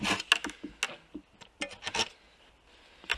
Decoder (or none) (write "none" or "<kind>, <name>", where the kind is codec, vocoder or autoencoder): none